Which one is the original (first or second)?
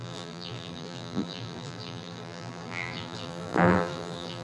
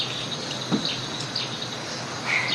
second